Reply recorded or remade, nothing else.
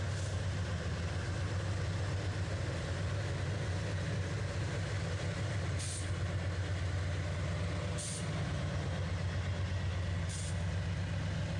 recorded